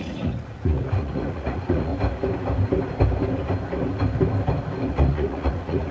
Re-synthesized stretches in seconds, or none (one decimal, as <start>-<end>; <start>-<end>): 0.0-1.9; 4.9-5.9